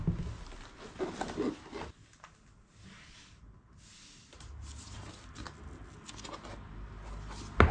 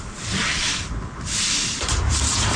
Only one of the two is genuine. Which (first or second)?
first